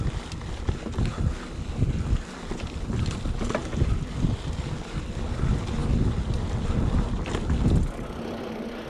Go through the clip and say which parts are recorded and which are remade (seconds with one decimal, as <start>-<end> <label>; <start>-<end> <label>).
0.0-8.9 recorded